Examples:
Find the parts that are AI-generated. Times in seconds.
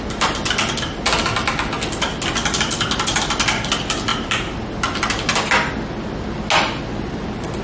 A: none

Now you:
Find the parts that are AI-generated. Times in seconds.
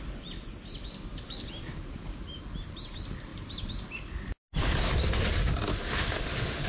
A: 5.7-6.7 (autoencoder, DAC-VAE)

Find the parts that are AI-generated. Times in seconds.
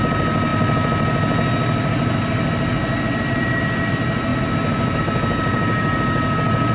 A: none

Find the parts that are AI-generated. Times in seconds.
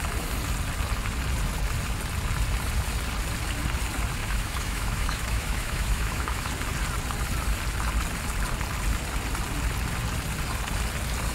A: 4.2-6.5 (autoencoder, DAC-VAE)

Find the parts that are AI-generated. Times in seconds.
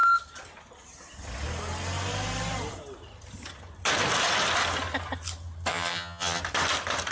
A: 5.7-6.4 (vocoder, HiFi-GAN)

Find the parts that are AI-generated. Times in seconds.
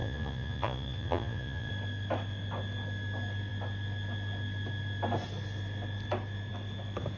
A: 0.0-1.7 (vocoder, Vocos)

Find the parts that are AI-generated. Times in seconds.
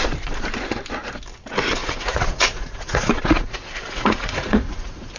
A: 1.8-5.2 (vocoder, Vocos)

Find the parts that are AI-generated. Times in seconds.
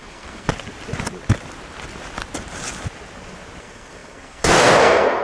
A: 0.0-0.5 (codec, SNAC); 3.6-5.2